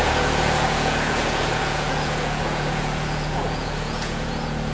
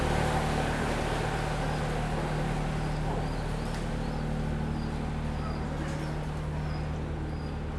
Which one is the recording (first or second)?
second